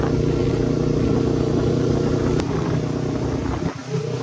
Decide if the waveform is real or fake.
real